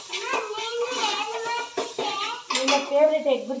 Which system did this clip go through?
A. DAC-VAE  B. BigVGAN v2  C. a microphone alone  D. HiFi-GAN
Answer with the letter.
C